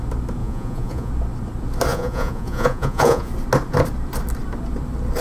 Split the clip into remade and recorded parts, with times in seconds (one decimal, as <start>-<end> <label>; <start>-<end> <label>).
0.0-0.4 recorded; 0.4-1.1 remade; 1.1-1.9 recorded; 1.9-3.3 remade; 3.3-5.2 recorded